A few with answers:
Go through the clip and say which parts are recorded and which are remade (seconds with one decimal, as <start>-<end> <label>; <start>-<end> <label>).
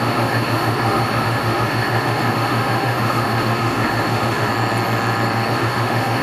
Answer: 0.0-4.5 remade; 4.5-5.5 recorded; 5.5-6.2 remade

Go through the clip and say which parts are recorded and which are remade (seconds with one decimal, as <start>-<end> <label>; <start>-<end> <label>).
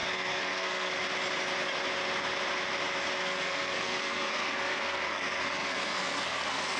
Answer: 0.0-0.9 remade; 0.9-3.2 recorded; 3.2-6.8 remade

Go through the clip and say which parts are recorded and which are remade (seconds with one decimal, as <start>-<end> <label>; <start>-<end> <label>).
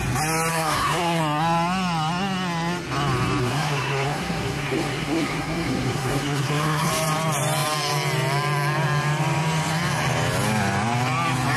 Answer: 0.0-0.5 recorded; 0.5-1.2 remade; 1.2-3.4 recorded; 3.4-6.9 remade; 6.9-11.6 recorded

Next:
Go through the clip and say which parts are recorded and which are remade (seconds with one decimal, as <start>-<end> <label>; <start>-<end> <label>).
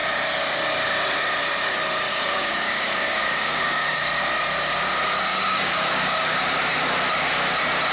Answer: 0.0-2.1 recorded; 2.1-4.0 remade; 4.0-5.3 recorded; 5.3-6.6 remade; 6.6-7.9 recorded